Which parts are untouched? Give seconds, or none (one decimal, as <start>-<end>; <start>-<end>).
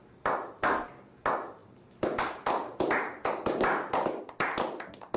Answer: 0.0-5.2